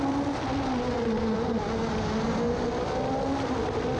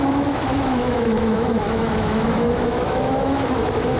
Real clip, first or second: first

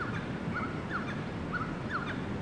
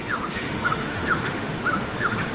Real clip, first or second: first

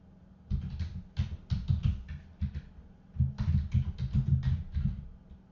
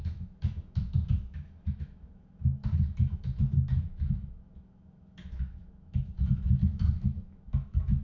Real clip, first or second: first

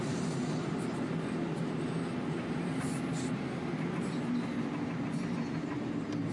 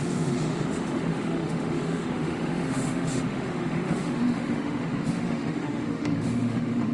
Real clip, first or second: first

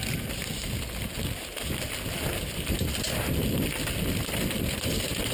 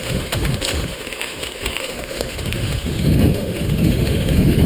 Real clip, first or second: first